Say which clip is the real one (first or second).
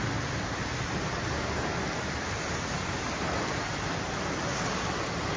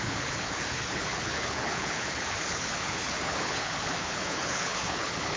first